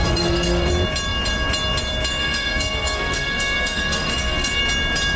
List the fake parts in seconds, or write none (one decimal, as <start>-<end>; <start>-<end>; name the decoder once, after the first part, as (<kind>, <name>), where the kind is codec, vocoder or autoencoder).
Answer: 0.0-0.7 (codec, SNAC); 2.1-4.6